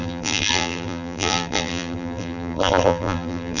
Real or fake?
fake